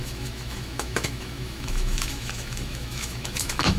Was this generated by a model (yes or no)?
yes